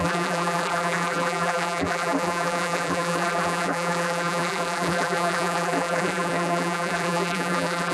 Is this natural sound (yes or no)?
no